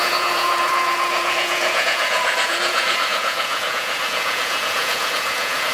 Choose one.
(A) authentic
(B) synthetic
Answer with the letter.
B